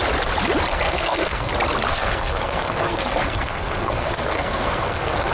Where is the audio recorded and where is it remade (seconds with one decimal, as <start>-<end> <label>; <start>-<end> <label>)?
0.0-0.7 recorded; 0.7-1.5 remade; 1.5-1.9 recorded; 1.9-5.3 remade